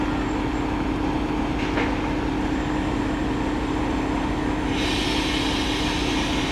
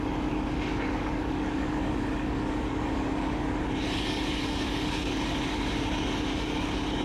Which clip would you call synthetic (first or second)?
second